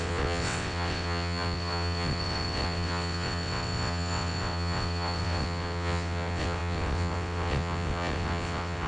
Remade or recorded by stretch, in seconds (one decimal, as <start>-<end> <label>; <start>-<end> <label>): 0.0-8.9 remade